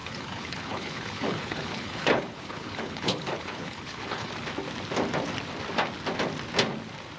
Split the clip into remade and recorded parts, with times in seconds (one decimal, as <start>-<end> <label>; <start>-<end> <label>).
0.0-4.3 remade; 4.3-7.2 recorded